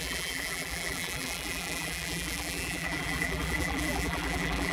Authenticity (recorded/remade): remade